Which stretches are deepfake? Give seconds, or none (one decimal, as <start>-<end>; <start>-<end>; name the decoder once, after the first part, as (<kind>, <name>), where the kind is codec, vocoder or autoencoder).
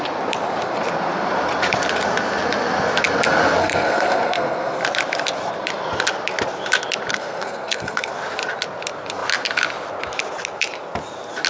3.6-4.8 (codec, SNAC); 7.1-8.1